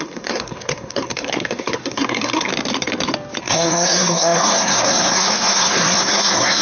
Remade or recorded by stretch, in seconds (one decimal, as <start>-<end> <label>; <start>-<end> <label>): 0.0-2.5 remade; 2.5-3.4 recorded; 3.4-6.6 remade